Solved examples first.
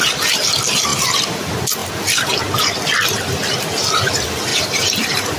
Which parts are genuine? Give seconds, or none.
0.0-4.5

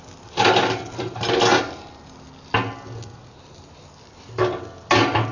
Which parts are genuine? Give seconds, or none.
0.0-5.3

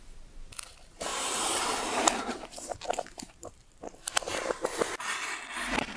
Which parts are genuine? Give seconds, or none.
0.0-1.1; 3.8-6.0

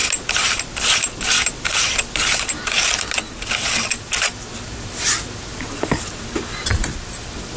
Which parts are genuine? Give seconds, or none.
3.5-5.5; 7.0-7.6

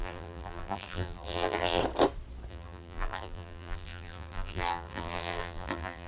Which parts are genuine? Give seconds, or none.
1.8-2.5

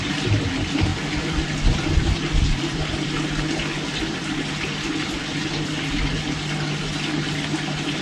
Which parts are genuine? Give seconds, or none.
0.0-0.9; 3.1-8.0

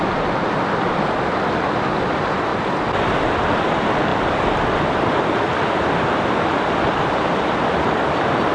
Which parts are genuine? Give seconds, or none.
0.0-4.1; 7.5-8.5

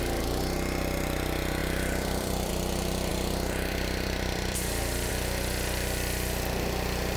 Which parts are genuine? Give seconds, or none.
0.0-1.6; 2.5-3.1; 5.1-7.2